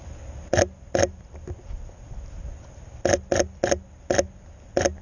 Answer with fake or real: real